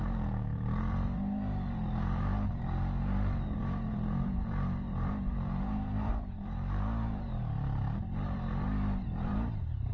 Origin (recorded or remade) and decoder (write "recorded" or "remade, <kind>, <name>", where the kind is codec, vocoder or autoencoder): remade, vocoder, BigVGAN v2